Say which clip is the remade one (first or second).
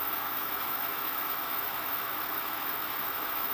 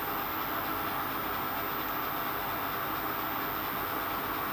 first